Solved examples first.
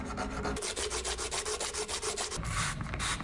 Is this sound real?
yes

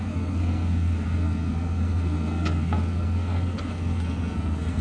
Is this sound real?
no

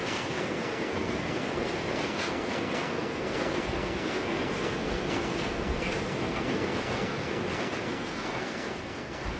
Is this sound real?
no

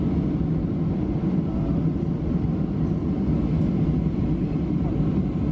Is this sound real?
yes